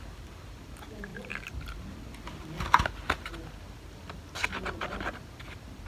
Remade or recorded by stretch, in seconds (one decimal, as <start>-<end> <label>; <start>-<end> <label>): 0.0-5.9 recorded